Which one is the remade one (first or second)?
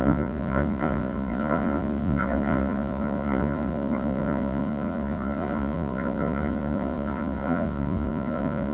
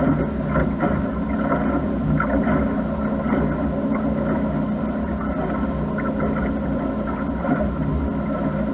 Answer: first